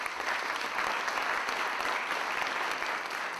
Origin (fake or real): real